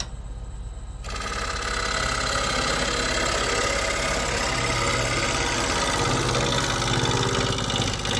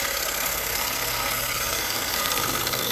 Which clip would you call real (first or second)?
first